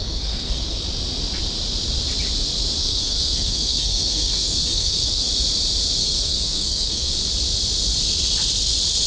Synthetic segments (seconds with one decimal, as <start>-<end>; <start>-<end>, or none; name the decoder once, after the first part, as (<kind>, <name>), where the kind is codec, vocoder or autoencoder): 0.0-0.8 (codec, SNAC); 2.8-5.3; 6.0-7.1